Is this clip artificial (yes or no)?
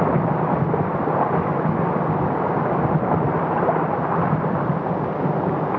no